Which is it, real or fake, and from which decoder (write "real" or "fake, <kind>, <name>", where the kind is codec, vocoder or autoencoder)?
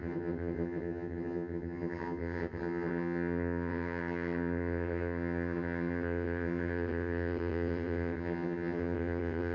fake, vocoder, HiFi-GAN